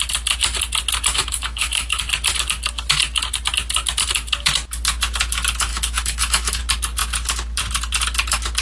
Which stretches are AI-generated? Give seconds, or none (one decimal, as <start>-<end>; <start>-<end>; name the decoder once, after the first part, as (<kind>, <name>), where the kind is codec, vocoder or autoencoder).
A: 1.2-2.0 (autoencoder, DAC-VAE); 5.7-6.6